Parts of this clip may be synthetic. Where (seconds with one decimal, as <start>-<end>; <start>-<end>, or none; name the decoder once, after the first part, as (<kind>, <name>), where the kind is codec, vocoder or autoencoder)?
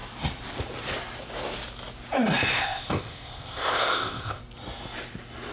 2.5-4.4 (codec, ZipCodec)